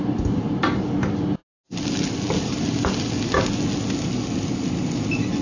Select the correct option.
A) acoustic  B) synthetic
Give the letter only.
A